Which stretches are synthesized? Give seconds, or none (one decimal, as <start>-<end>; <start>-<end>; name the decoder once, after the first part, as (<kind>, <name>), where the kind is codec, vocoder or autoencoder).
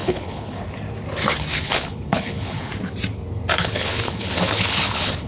0.0-0.6 (codec, HILCodec); 1.5-2.7; 3.6-5.3